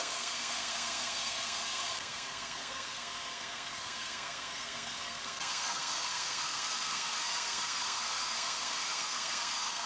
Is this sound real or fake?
fake